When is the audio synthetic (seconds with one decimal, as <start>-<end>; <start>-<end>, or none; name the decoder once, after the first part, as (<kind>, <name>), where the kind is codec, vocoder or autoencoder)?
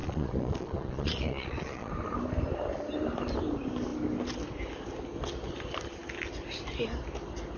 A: 0.0-1.9 (vocoder, Vocos)